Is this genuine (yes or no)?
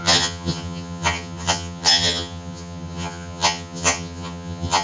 no